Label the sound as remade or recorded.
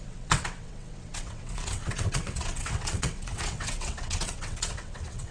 remade